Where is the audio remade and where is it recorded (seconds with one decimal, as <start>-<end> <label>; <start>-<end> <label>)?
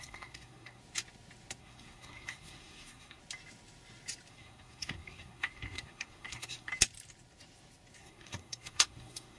0.0-0.8 remade; 0.8-1.6 recorded; 1.6-3.2 remade; 3.2-4.3 recorded; 4.3-6.7 remade; 6.7-8.0 recorded; 8.0-9.4 remade